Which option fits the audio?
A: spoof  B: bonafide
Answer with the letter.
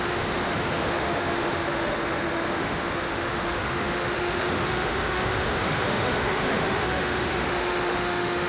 A